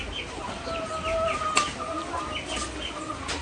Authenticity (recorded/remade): recorded